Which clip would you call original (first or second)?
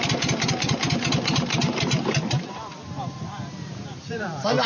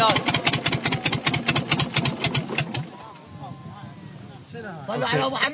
second